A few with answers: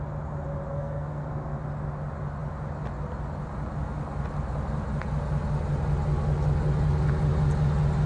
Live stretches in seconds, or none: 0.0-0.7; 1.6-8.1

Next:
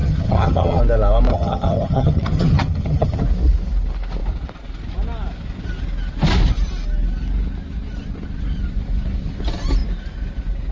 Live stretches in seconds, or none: 0.8-1.3; 3.2-10.7